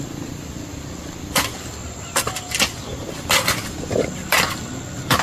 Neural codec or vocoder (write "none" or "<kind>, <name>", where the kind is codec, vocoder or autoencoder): vocoder, BigVGAN v2